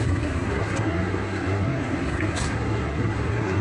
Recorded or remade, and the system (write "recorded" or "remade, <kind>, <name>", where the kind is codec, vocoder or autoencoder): remade, codec, SNAC